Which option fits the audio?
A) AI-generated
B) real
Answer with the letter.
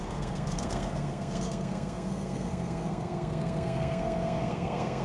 A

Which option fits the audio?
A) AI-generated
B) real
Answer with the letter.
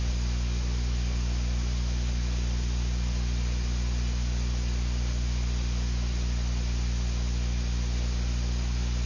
B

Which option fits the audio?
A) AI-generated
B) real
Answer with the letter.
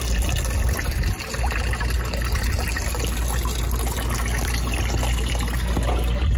B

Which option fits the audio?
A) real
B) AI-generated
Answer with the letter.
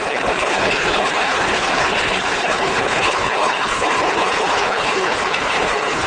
B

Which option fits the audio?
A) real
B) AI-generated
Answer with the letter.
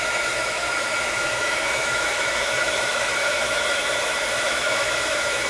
B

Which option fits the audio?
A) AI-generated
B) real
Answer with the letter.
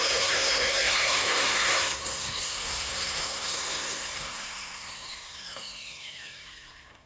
A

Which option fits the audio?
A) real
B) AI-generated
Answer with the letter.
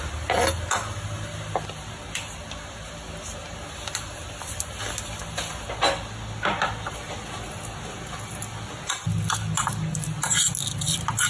A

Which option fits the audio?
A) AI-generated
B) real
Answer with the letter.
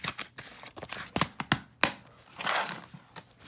B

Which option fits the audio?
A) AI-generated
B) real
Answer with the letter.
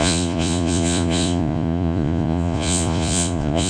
A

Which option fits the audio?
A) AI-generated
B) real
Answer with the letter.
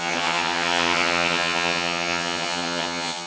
A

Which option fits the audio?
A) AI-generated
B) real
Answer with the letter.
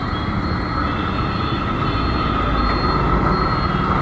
B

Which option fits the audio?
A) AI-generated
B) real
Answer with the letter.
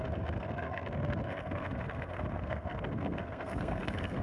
A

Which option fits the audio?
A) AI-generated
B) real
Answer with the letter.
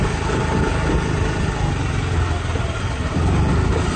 B